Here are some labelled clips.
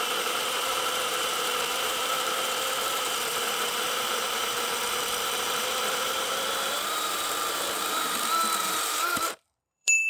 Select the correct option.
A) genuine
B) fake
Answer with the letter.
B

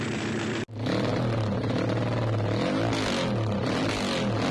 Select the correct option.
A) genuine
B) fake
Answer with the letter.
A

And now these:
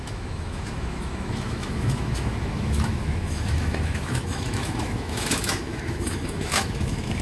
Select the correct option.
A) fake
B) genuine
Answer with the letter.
A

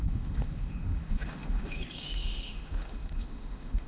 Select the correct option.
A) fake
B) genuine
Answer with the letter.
A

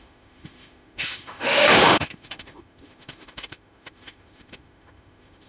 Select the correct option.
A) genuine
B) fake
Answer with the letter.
B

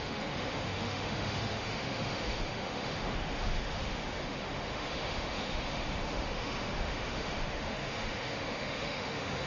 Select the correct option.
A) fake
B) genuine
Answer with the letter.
A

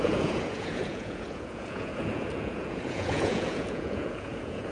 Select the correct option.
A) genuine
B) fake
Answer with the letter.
B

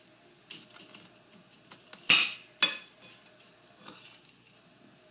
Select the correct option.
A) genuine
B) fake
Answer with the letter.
A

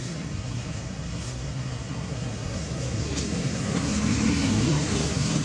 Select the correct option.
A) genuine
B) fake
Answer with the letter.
B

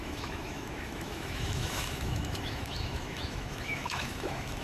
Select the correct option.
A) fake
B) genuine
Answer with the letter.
A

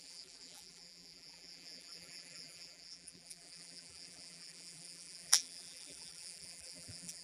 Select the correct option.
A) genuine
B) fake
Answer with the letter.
B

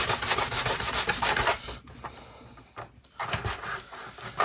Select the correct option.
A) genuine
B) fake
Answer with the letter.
A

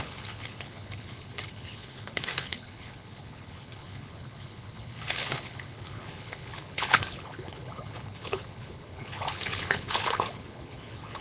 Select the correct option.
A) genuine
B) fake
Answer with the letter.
B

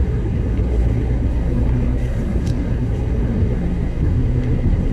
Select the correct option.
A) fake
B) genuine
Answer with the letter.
A